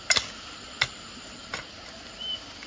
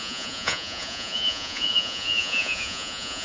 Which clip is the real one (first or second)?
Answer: first